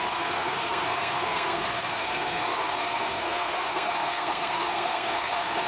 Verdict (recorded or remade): remade